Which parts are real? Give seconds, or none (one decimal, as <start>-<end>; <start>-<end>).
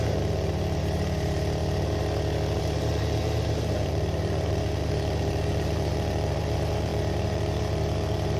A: 1.6-2.6